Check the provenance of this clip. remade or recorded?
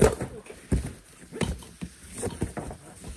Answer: recorded